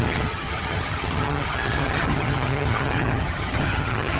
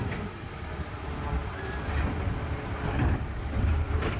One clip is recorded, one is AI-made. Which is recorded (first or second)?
second